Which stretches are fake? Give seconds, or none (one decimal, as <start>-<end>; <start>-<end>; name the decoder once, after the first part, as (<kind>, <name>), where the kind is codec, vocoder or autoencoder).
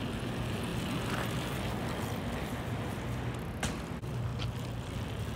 none